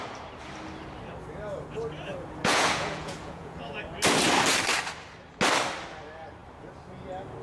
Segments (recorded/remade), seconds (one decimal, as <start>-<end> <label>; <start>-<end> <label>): 0.0-2.1 recorded; 2.1-3.8 remade; 3.8-7.4 recorded